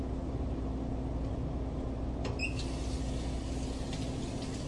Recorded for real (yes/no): yes